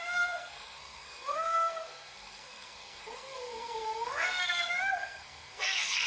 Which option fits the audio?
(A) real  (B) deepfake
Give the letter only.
B